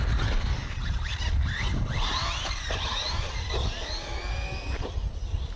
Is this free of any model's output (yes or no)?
yes